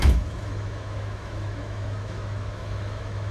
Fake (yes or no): yes